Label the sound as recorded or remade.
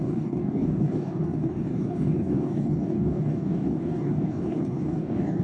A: remade